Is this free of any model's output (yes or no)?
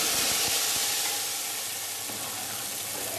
yes